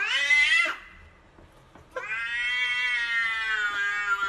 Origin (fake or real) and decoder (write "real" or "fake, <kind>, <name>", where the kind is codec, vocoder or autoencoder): real